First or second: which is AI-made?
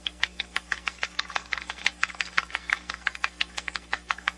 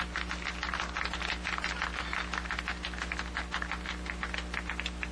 first